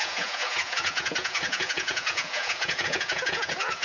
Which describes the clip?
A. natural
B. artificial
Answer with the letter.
B